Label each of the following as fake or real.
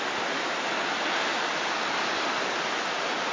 real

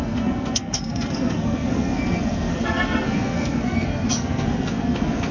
fake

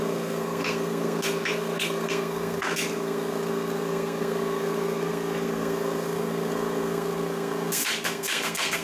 fake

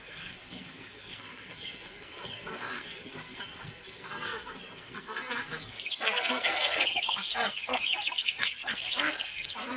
fake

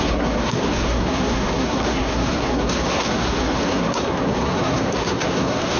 fake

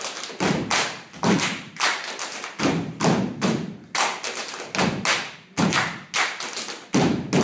real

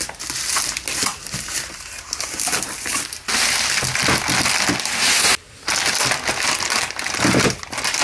real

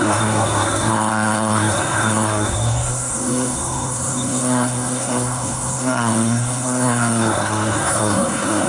fake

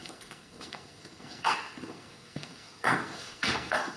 fake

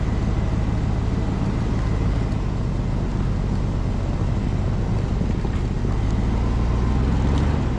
real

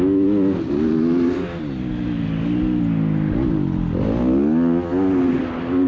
real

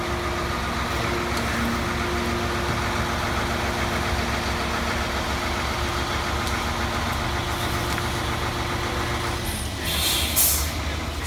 real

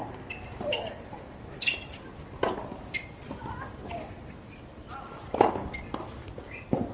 real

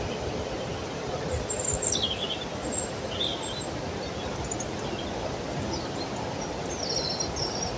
real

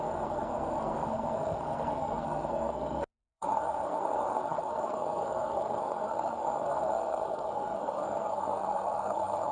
fake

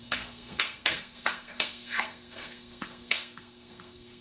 fake